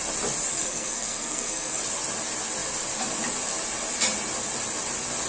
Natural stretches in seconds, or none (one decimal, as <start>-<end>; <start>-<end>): 0.0-0.5; 1.8-5.3